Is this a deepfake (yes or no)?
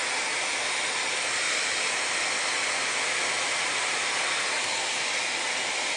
no